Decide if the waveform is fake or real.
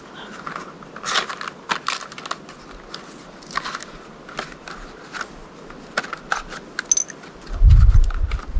real